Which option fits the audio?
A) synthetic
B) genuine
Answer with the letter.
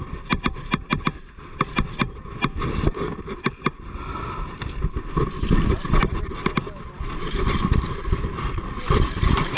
B